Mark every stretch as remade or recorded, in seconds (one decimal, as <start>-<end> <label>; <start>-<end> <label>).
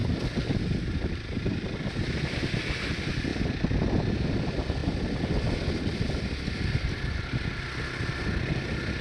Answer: 0.0-9.0 recorded